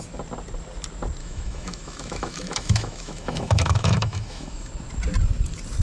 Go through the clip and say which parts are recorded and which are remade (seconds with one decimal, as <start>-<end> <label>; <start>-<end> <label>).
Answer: 0.0-1.2 recorded; 1.2-4.7 remade; 4.7-5.8 recorded